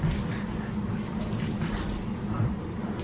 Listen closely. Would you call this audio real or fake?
real